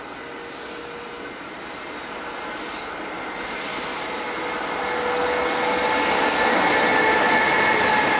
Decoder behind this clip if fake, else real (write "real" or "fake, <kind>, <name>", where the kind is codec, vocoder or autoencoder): real